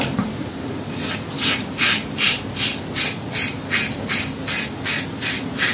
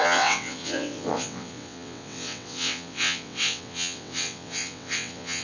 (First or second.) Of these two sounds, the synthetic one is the second